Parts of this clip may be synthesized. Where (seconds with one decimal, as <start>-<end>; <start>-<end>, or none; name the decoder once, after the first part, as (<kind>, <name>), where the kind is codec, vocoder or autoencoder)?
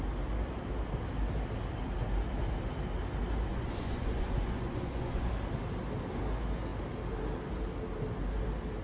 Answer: 3.5-5.3 (vocoder, Vocos)